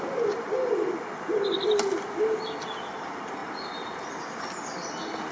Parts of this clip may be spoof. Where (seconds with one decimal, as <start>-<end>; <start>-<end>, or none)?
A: none